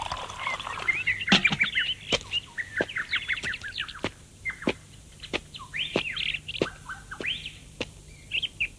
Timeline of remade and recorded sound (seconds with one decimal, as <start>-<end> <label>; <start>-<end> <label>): 0.0-3.5 recorded; 3.5-8.8 remade